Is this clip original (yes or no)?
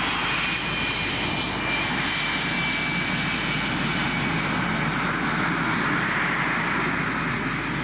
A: yes